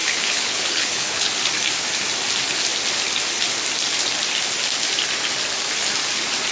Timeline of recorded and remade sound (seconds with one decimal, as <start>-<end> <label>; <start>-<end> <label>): 0.0-1.3 remade; 1.3-6.5 recorded